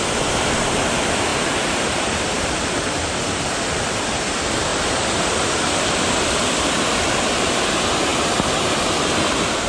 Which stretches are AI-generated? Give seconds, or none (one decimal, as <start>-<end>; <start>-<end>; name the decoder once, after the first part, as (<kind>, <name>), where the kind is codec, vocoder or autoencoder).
1.3-4.2 (vocoder, BigVGAN v2); 4.7-6.3